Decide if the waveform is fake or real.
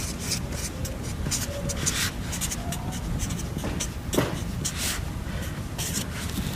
real